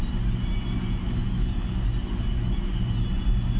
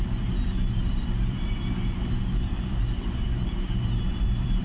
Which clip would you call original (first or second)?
first